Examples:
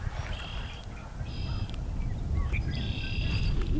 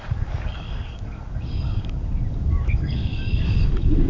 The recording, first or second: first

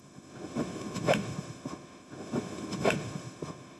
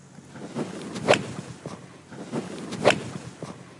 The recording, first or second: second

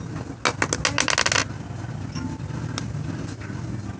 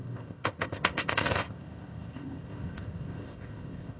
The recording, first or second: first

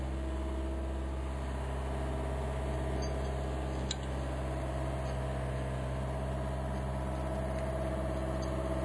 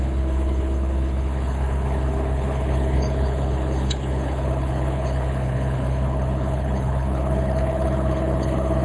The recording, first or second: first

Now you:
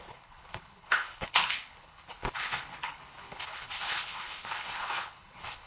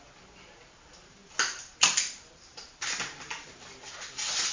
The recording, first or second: second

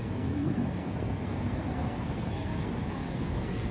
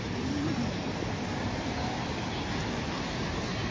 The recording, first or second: second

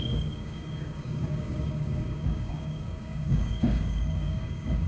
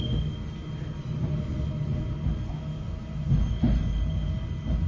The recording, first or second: second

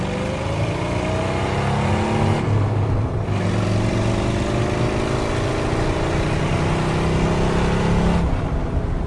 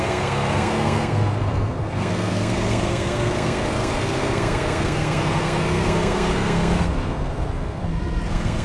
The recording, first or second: first